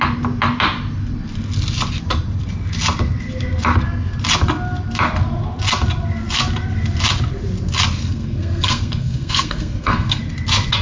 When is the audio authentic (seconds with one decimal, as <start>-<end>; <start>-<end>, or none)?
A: 0.0-8.0; 10.2-10.8